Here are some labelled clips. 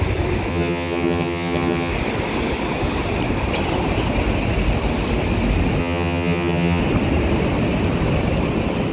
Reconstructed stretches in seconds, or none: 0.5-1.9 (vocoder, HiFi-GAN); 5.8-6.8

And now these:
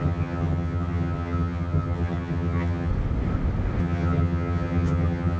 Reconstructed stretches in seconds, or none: 0.0-2.9 (vocoder, HiFi-GAN); 3.8-5.4

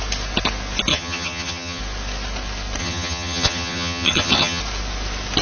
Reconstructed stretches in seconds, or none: 0.9-1.8 (vocoder, HiFi-GAN); 2.8-4.6